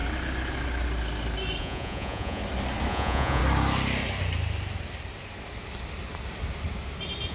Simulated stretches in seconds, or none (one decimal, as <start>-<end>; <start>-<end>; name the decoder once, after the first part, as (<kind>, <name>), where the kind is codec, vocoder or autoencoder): 1.6-2.4 (vocoder, Vocos); 2.9-3.4